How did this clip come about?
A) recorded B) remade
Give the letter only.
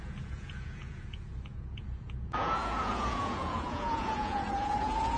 B